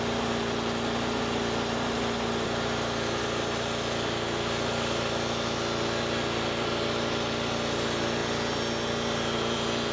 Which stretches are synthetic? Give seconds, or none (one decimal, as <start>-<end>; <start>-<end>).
none